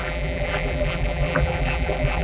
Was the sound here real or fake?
fake